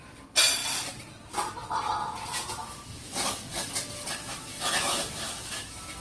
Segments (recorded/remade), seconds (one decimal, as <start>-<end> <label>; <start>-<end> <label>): 0.0-2.6 recorded; 2.6-3.7 remade; 3.7-4.2 recorded; 4.2-6.0 remade